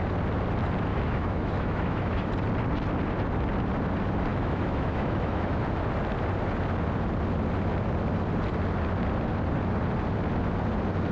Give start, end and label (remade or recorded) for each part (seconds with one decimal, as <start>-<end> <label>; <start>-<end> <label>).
0.0-0.9 recorded; 0.9-2.3 remade; 2.3-4.3 recorded; 4.3-5.6 remade; 5.6-11.1 recorded